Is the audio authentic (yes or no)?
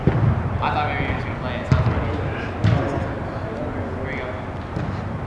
yes